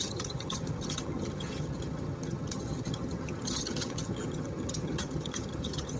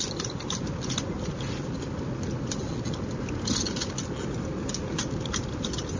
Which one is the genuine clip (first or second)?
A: second